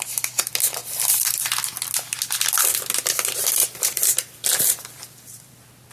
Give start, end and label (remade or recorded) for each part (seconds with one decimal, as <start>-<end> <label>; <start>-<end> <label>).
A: 0.0-0.8 recorded; 0.8-1.4 remade; 1.4-3.6 recorded; 3.6-5.5 remade; 5.5-5.9 recorded